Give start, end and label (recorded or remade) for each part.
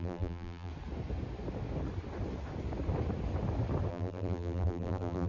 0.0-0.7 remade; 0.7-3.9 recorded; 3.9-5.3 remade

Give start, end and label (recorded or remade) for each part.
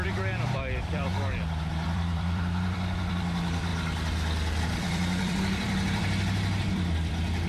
0.0-1.1 remade; 1.1-1.9 recorded; 1.9-3.7 remade; 3.7-4.6 recorded; 4.6-7.5 remade